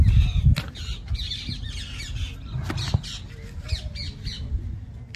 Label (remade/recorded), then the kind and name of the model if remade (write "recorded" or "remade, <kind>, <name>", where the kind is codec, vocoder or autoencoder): recorded